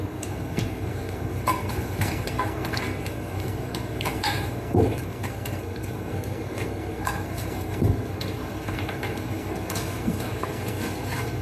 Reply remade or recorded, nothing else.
remade